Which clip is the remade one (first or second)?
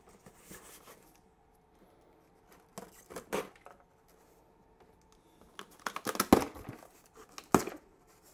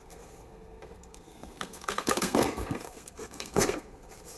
second